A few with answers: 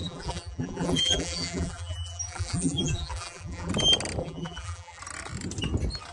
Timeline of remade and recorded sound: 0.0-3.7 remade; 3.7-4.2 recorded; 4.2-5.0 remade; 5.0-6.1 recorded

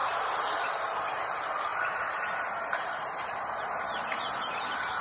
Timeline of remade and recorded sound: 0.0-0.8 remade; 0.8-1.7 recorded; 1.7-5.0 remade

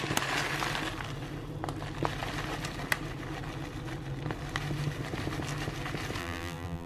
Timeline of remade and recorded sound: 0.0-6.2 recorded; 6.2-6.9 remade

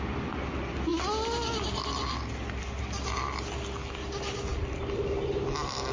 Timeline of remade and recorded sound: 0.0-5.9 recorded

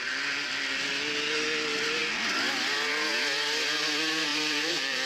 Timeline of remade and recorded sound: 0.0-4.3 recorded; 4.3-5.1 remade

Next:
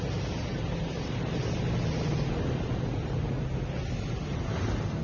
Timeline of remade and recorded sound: 0.0-0.5 recorded; 0.5-1.4 remade; 1.4-5.0 recorded